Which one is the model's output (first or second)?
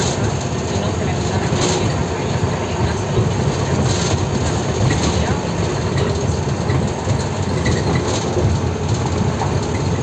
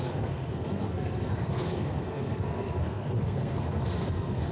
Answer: second